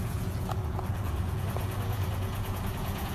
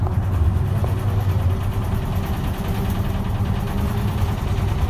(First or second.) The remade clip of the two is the first